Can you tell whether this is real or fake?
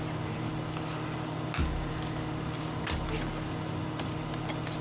real